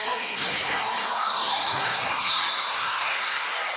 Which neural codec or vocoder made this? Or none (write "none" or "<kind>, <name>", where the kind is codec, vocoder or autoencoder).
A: codec, SNAC